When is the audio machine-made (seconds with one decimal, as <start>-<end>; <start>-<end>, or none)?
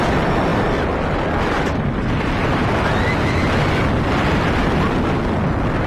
none